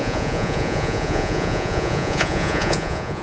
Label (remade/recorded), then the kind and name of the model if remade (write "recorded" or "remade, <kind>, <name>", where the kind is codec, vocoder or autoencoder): remade, vocoder, Vocos